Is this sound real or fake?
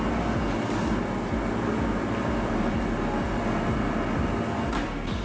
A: real